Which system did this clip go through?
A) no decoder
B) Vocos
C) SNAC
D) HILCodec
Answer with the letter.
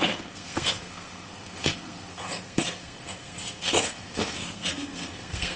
C